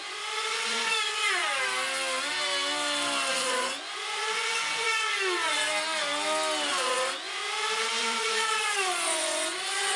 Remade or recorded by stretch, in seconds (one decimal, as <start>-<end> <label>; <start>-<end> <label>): 0.0-1.4 remade; 1.4-3.3 recorded; 3.3-5.7 remade; 5.7-6.7 recorded; 6.7-7.4 remade; 7.4-8.0 recorded; 8.0-10.0 remade

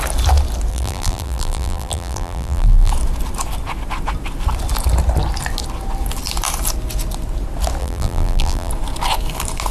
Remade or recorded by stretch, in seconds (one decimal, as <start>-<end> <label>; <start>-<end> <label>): 0.0-0.7 recorded; 0.7-2.9 remade; 2.9-7.8 recorded; 7.8-8.7 remade; 8.7-9.7 recorded